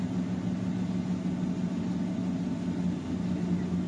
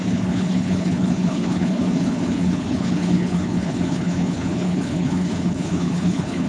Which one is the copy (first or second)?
second